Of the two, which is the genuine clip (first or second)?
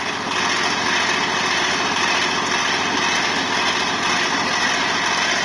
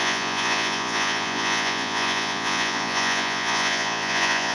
first